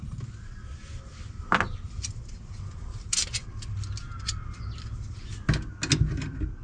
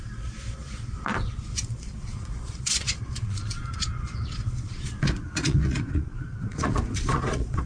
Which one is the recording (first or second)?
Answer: first